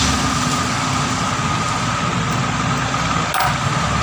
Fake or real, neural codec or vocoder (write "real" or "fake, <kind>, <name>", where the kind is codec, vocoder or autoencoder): real